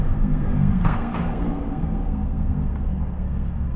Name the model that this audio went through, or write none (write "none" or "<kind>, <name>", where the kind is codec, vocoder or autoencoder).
codec, SNAC